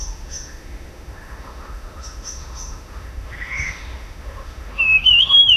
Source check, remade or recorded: remade